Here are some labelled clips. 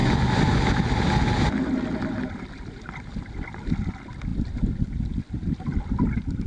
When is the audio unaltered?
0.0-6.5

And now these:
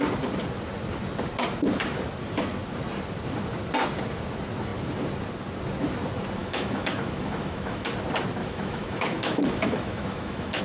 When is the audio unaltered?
0.0-6.4; 7.9-8.4

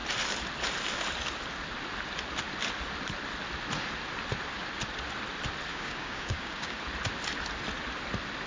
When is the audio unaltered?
0.0-5.7; 6.8-8.5

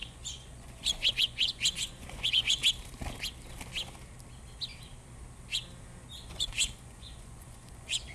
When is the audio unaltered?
2.6-6.2

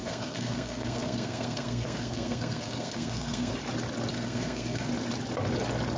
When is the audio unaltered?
3.5-4.1; 4.9-6.0

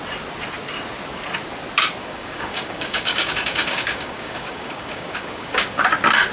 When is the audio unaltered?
0.0-2.0; 5.8-6.3

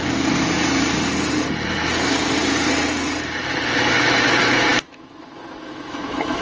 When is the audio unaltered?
0.0-3.8